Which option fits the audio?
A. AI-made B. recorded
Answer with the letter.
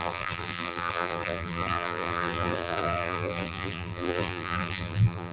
A